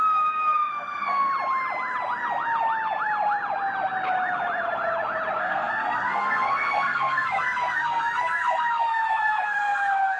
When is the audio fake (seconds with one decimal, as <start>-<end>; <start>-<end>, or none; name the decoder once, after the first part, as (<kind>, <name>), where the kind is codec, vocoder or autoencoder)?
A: 0.0-1.3 (codec, SNAC); 5.4-10.2